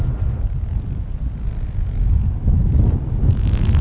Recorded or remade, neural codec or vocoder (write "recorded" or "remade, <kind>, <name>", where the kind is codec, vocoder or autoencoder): recorded